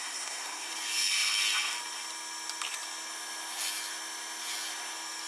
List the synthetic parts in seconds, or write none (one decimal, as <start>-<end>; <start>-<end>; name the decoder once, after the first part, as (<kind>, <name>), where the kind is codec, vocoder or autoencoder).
0.0-0.7 (codec, SNAC)